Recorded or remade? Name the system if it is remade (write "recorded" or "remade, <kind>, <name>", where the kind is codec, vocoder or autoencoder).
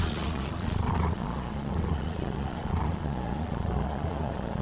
remade, vocoder, Vocos